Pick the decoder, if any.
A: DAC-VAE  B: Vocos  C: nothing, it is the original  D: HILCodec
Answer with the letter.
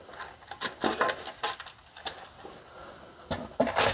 C